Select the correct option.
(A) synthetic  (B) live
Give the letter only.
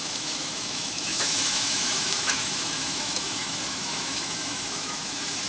A